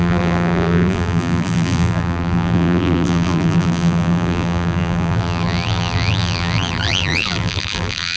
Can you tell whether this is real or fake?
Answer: fake